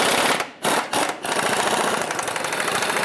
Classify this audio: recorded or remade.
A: recorded